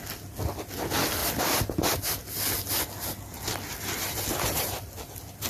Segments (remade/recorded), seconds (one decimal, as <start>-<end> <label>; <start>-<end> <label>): 0.0-5.5 recorded